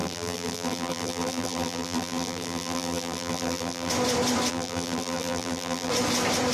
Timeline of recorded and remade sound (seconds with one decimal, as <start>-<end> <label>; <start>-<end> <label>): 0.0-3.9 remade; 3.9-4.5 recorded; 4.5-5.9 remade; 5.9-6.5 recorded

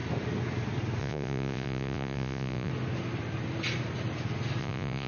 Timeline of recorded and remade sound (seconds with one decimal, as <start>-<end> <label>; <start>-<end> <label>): 0.0-1.0 recorded; 1.0-2.7 remade; 2.7-4.6 recorded; 4.6-5.1 remade

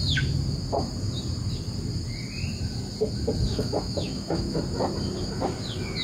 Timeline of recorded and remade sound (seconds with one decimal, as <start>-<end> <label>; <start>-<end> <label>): 0.0-3.5 recorded; 3.5-4.6 remade; 4.6-6.0 recorded